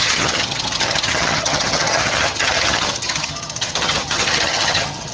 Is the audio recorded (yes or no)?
no